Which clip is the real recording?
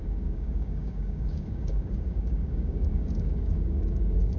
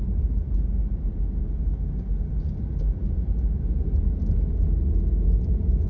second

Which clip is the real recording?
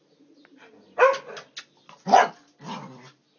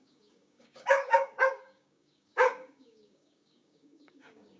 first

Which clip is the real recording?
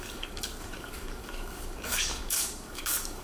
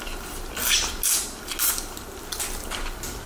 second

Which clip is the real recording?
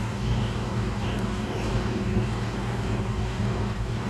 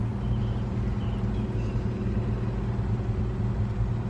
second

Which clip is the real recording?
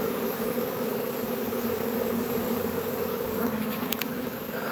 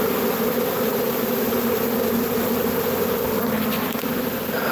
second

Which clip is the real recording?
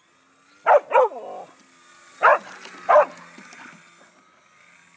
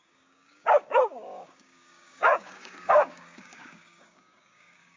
first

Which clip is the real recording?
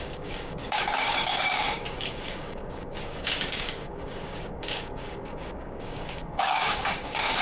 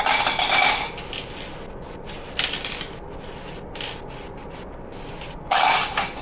second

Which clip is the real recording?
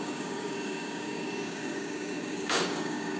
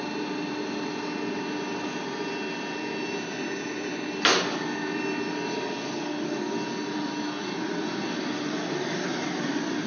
second